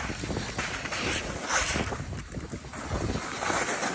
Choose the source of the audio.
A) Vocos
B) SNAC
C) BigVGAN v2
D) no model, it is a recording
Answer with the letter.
D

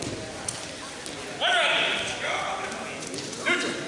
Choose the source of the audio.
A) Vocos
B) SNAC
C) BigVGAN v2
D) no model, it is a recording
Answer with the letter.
D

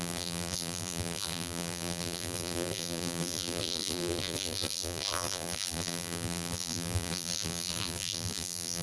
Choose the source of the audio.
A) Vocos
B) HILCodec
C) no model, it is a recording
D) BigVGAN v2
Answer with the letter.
D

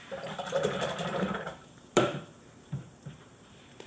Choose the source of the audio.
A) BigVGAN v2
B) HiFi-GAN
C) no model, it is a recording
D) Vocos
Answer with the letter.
A